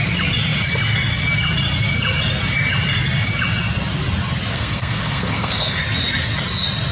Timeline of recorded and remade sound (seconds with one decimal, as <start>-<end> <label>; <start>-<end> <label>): 0.0-4.5 recorded; 4.5-5.8 remade; 5.8-6.9 recorded